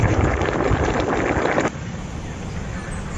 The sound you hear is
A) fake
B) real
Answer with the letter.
B